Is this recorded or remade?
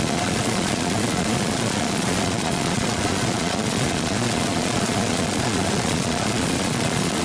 remade